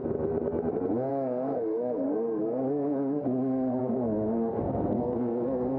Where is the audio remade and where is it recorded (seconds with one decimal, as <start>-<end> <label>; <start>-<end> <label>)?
0.0-1.1 recorded; 1.1-5.8 remade